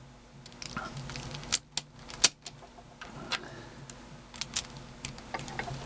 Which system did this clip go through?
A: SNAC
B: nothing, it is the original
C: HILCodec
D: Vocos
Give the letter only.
B